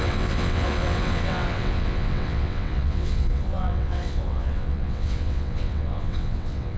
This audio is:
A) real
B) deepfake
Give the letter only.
B